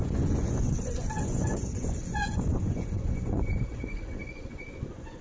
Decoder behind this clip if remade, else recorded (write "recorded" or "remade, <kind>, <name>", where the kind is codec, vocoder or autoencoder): remade, vocoder, Vocos